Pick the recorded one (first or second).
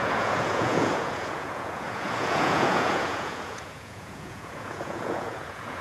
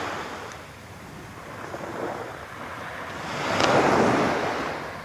second